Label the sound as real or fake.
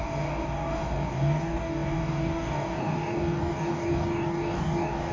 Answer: fake